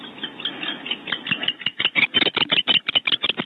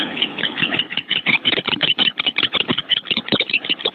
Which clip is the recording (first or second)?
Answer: first